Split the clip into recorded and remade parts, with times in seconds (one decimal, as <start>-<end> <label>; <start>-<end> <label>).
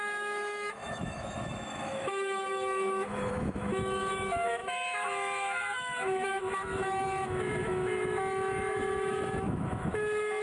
0.0-10.4 remade